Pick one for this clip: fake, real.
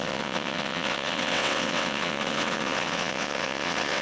fake